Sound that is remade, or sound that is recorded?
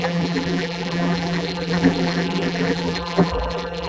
remade